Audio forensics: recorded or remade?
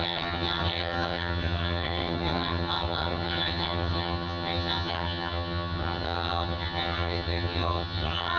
remade